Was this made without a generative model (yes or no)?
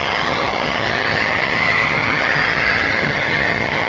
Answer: no